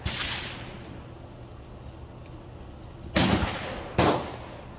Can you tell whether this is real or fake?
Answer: real